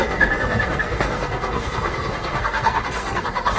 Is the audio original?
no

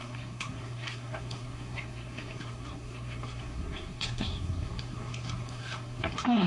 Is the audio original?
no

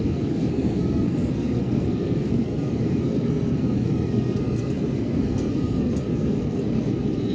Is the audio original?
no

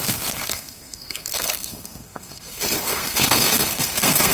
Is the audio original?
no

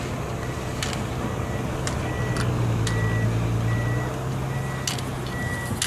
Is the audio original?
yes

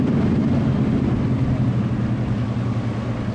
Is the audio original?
yes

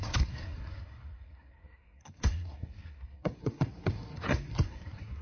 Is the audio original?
no